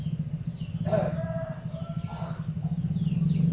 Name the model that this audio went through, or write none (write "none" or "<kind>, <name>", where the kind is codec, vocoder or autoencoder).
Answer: none